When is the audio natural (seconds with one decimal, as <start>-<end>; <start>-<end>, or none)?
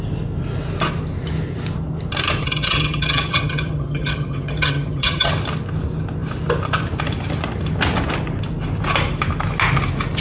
0.0-2.4; 5.3-10.2